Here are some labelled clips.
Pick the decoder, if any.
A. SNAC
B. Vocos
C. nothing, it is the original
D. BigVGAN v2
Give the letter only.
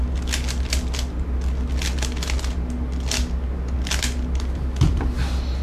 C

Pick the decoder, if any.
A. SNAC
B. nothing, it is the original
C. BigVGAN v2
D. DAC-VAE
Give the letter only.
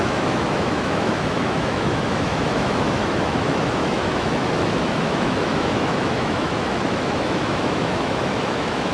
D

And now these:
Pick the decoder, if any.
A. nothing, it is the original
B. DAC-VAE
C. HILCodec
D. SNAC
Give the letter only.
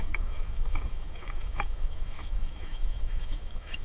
B